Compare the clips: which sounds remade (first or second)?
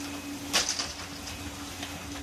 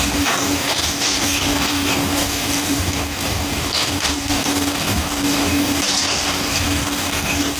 second